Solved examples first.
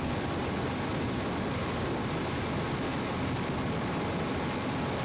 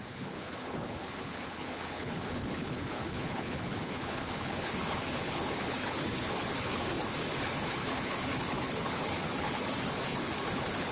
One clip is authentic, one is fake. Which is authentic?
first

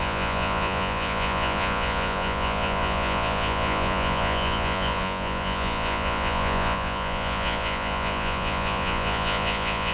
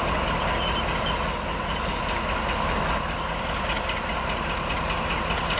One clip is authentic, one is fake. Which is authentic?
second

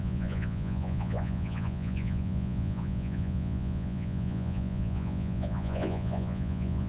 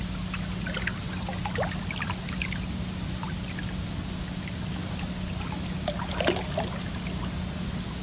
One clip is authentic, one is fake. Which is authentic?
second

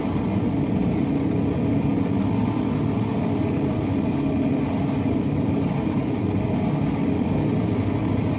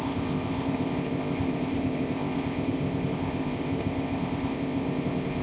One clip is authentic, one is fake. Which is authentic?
first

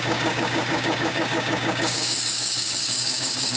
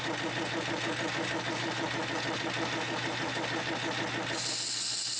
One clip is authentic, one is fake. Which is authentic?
second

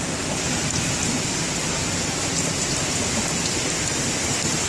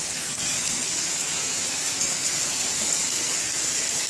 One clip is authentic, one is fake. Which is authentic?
first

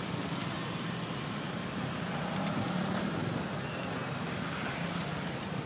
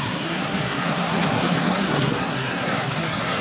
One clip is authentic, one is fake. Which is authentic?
first